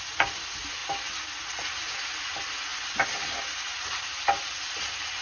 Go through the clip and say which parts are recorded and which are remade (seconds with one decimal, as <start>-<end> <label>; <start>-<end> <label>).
0.0-5.2 recorded